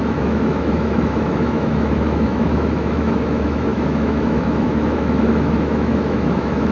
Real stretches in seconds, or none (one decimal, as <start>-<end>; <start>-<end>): none